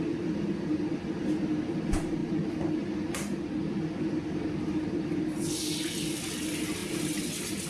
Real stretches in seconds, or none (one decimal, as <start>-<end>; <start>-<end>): 0.0-7.7